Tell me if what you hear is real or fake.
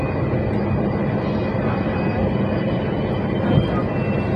real